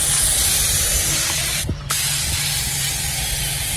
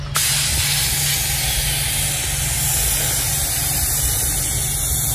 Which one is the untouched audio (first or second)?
second